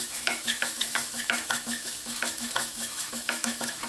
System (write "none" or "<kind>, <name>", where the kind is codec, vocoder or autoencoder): autoencoder, DAC-VAE